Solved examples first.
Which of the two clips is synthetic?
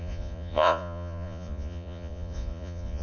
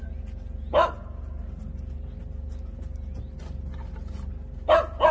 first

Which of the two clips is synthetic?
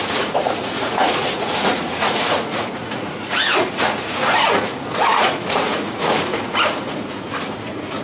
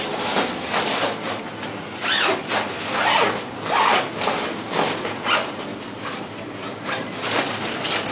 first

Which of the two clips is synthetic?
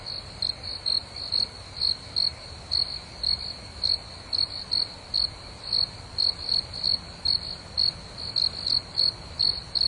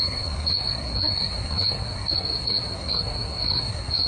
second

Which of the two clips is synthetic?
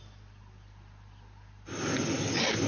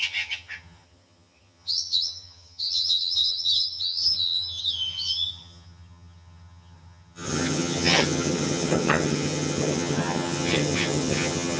second